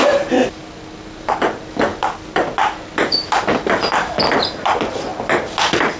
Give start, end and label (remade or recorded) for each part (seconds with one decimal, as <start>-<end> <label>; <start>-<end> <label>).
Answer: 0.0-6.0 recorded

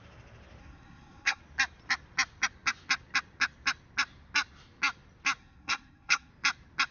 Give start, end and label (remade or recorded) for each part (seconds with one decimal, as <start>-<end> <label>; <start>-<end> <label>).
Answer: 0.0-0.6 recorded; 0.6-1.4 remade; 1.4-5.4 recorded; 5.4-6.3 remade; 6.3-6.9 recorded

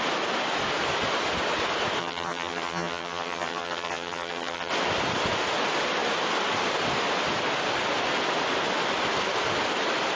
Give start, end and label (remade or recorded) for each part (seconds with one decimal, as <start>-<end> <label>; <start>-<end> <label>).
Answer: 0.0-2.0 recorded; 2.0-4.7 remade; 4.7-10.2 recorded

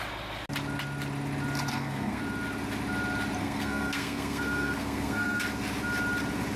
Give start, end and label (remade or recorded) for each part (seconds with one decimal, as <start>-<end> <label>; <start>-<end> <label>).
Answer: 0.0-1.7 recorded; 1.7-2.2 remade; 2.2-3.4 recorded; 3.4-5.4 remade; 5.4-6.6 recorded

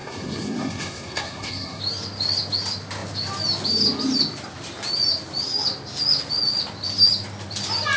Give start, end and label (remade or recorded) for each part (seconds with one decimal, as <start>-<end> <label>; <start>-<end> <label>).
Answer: 0.0-1.8 remade; 1.8-8.0 recorded